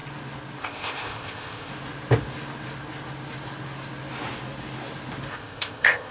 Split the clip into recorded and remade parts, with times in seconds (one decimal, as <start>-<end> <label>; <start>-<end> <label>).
0.0-0.6 recorded; 0.6-1.7 remade; 1.7-5.3 recorded; 5.3-6.1 remade